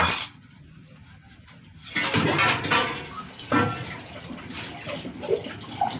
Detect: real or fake real